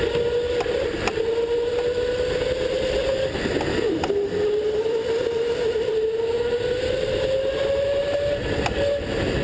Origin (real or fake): real